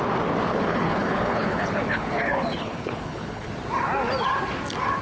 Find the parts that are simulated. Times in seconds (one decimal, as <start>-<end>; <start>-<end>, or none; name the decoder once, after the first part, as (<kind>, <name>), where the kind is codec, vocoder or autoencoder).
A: 0.5-3.5 (codec, HILCodec)